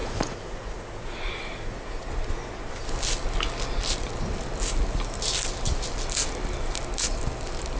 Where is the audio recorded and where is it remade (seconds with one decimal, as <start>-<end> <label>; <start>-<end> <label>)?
0.0-2.1 remade; 2.1-7.8 recorded